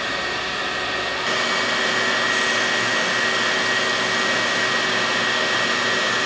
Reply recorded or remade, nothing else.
recorded